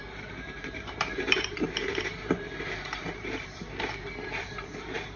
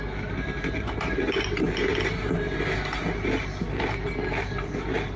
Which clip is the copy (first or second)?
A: first